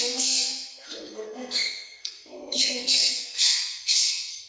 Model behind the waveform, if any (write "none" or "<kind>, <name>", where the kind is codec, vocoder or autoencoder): codec, SNAC